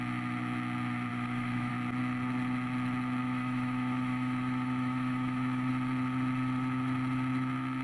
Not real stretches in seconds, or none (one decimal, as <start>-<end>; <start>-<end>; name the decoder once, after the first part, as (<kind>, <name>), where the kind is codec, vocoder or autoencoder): 1.1-1.7 (autoencoder, DAC-VAE); 3.2-5.7